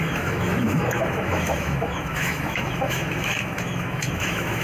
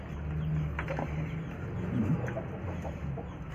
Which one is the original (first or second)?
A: second